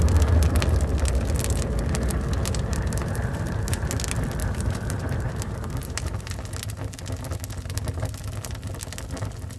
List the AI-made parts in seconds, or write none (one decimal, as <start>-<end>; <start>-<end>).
2.7-3.9; 4.4-6.4